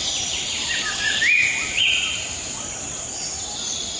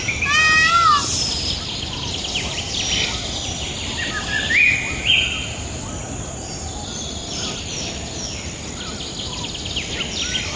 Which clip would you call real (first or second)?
second